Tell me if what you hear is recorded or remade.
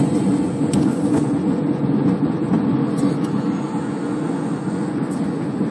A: remade